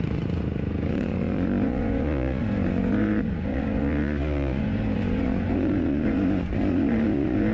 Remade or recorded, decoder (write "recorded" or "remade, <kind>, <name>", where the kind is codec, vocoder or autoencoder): remade, vocoder, Vocos